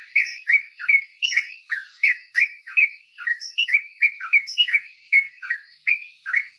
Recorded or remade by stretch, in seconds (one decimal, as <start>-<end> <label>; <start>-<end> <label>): 0.0-6.6 remade